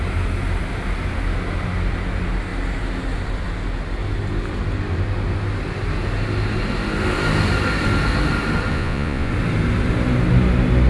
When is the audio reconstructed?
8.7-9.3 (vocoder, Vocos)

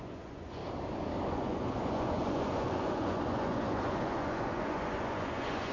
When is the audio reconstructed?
0.0-0.6 (vocoder, Vocos); 1.3-5.7

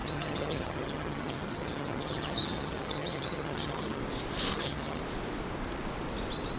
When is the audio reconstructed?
0.0-4.0 (vocoder, HiFi-GAN); 4.5-5.0

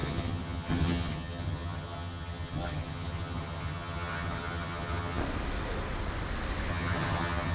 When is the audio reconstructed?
0.0-5.2 (vocoder, HiFi-GAN); 6.7-7.5

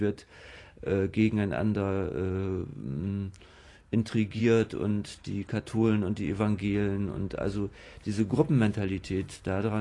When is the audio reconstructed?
0.0-9.8 (vocoder, BigVGAN v2)

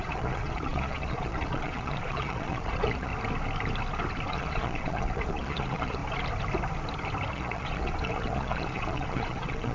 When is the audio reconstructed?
0.0-3.1 (vocoder, Vocos); 4.3-6.0; 7.3-9.7